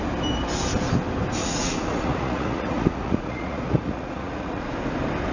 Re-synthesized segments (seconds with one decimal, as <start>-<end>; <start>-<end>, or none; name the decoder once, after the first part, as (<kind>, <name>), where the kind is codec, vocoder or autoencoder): 1.4-4.6 (vocoder, Vocos)